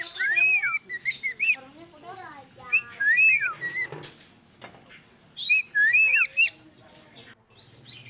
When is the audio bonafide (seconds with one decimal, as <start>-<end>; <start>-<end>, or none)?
0.0-8.1